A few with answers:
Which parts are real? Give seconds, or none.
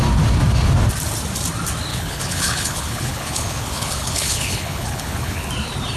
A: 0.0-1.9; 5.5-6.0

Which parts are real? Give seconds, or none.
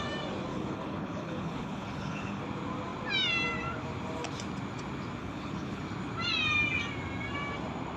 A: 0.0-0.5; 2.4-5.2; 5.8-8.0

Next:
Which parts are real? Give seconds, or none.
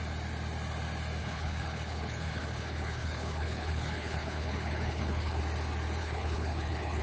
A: 0.0-1.2; 5.4-6.0